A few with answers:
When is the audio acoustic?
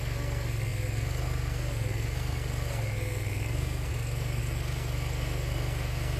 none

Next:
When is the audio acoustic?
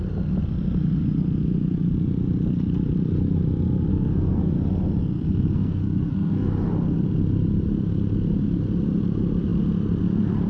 0.0-3.9; 4.5-5.0; 6.5-10.5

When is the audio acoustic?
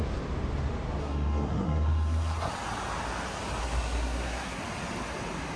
0.0-1.0; 2.5-3.6; 4.6-5.6